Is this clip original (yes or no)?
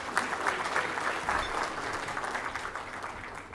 yes